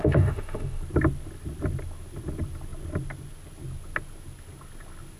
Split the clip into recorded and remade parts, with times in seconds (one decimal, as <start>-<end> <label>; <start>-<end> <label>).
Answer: 0.0-0.8 remade; 0.8-5.2 recorded